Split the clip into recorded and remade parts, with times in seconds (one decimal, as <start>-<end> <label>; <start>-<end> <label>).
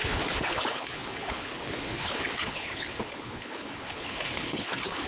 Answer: 0.0-5.1 remade